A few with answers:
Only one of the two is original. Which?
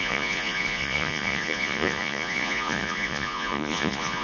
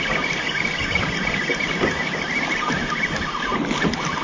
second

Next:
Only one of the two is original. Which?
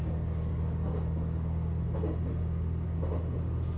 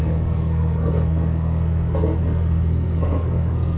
first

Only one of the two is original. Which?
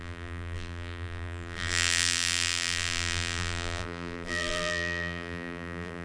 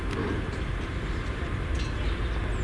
second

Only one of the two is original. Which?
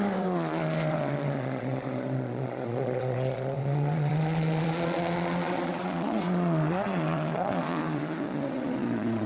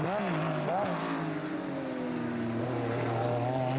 second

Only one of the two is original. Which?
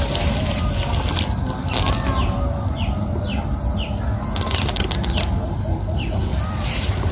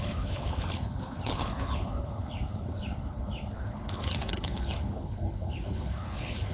first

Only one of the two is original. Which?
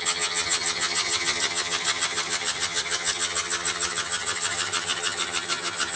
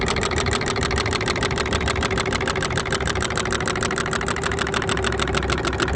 second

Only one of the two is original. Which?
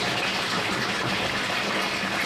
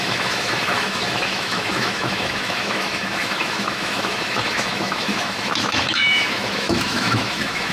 first